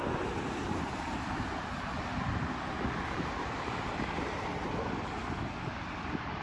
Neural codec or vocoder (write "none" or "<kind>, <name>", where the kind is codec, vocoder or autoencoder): none